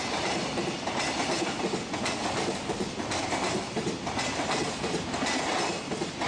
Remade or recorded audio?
recorded